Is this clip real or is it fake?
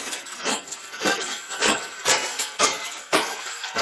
fake